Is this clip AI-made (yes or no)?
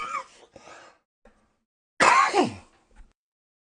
no